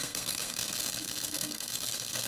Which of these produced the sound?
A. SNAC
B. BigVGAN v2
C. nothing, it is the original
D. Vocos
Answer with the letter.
A